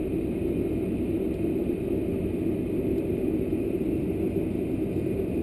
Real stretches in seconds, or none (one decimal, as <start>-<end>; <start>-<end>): 0.0-5.4